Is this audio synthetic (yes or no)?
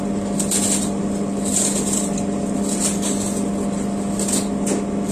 no